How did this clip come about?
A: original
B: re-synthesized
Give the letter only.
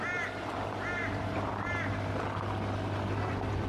A